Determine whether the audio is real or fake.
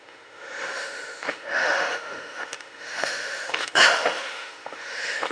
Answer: fake